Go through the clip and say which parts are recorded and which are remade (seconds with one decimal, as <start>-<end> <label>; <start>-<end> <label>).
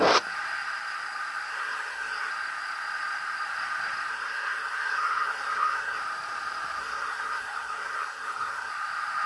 0.0-1.5 recorded; 1.5-2.3 remade; 2.3-4.1 recorded; 4.1-6.0 remade; 6.0-6.8 recorded; 6.8-8.7 remade; 8.7-9.3 recorded